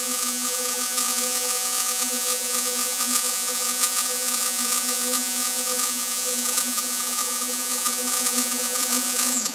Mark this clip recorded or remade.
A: remade